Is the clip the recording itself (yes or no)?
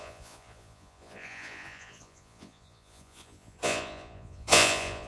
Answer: no